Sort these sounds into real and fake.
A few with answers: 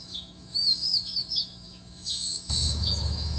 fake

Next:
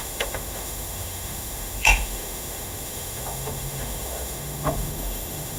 fake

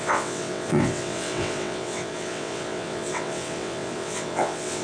fake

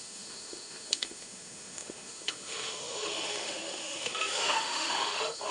fake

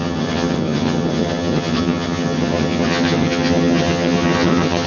fake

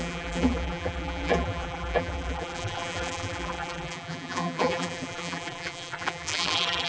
fake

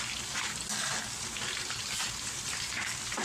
real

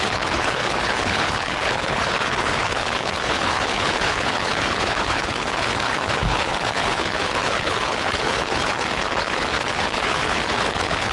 fake